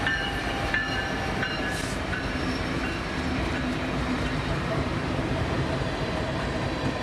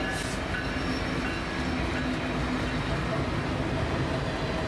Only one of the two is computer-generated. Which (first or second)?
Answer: first